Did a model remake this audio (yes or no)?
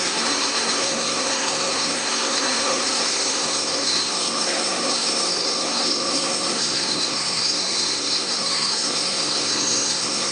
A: yes